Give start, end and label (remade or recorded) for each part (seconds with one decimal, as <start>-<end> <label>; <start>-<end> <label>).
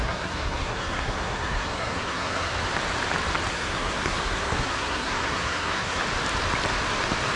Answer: 0.0-2.5 remade; 2.5-3.5 recorded; 3.5-6.0 remade; 6.0-7.4 recorded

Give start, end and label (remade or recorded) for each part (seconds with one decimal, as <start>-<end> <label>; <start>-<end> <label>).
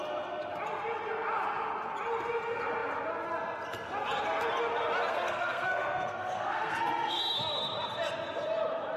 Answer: 0.0-5.1 recorded; 5.1-7.2 remade; 7.2-9.0 recorded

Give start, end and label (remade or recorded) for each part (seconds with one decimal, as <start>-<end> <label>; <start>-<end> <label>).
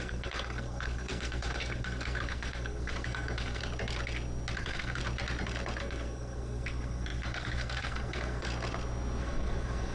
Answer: 0.0-3.6 remade; 3.6-4.6 recorded; 4.6-5.0 remade; 5.0-5.8 recorded; 5.8-8.5 remade; 8.5-9.2 recorded; 9.2-9.9 remade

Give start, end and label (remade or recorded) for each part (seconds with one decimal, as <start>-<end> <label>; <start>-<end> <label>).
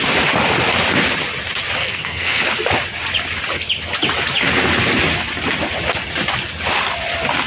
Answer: 0.0-1.8 recorded; 1.8-2.4 remade; 2.4-7.5 recorded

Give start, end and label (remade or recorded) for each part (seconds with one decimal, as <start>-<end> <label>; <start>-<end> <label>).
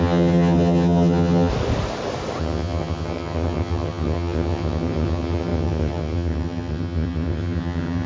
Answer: 0.0-1.5 remade; 1.5-2.4 recorded; 2.4-8.1 remade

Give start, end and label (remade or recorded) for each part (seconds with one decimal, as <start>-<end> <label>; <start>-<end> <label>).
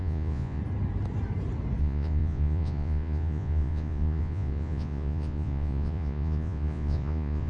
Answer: 0.0-0.6 remade; 0.6-1.8 recorded; 1.8-7.5 remade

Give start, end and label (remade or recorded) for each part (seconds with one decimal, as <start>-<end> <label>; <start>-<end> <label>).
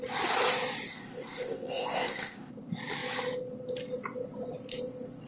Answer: 0.0-0.9 recorded; 0.9-2.5 remade; 2.5-5.3 recorded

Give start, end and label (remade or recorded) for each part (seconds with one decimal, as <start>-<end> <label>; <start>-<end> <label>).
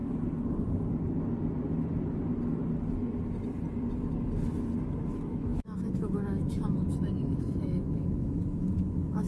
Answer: 0.0-5.1 recorded; 5.1-9.3 remade